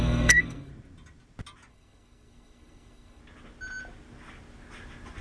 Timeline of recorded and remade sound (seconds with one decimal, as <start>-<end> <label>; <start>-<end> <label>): 0.0-0.7 remade; 0.7-1.7 recorded; 1.7-3.2 remade; 3.2-5.2 recorded